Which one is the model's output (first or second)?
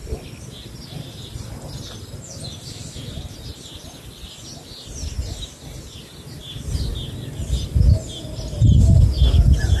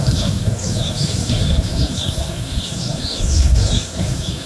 second